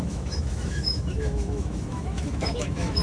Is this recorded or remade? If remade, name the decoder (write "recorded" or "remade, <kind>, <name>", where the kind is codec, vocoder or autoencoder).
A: remade, autoencoder, DAC-VAE